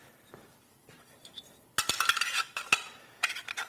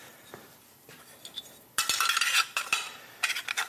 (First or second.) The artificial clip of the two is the first